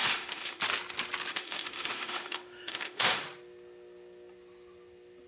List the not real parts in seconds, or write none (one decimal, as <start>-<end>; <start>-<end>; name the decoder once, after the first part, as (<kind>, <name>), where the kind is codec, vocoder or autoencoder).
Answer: 0.0-0.6 (autoencoder, DAC-VAE); 1.3-3.2